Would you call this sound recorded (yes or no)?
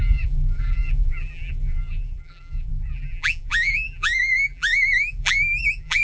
no